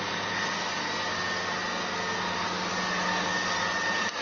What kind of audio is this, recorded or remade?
recorded